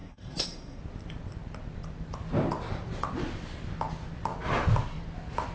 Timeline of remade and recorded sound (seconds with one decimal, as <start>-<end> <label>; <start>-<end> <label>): 0.0-0.8 remade; 0.8-5.5 recorded